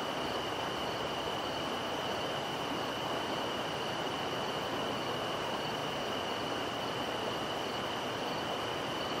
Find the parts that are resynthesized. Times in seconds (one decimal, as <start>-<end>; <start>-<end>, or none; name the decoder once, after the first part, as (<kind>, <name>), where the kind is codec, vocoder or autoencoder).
0.0-1.8 (vocoder, BigVGAN v2); 2.8-5.8; 6.7-9.2